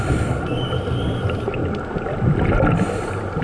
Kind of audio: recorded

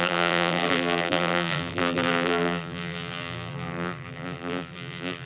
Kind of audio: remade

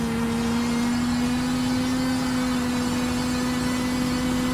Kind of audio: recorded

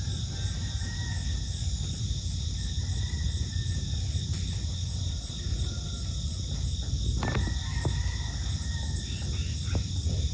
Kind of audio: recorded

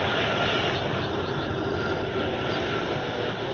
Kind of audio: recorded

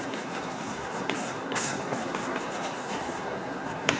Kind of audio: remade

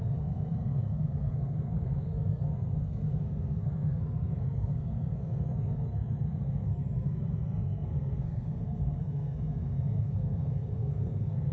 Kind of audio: remade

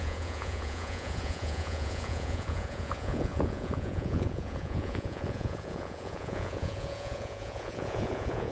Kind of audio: remade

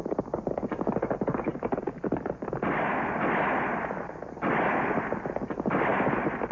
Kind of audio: recorded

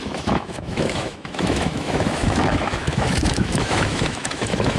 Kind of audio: remade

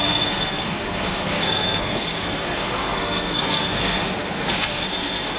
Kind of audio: remade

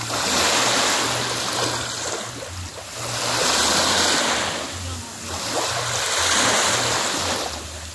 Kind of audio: recorded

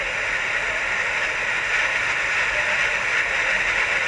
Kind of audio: recorded